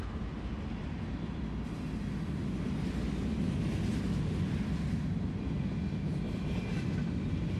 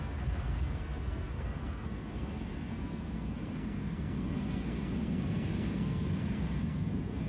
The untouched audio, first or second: first